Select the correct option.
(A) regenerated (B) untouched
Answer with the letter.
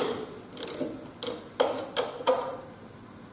B